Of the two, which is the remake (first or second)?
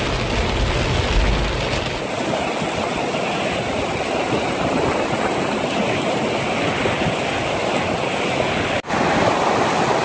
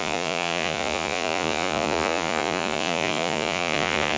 second